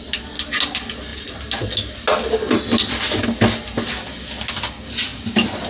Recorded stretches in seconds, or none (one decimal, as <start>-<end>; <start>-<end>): 0.0-5.7